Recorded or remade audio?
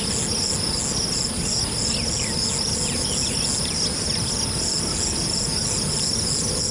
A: recorded